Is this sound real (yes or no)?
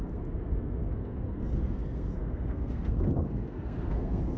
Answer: no